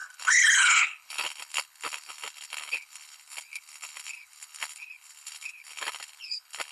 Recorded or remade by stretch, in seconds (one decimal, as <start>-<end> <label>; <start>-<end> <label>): 0.0-6.7 remade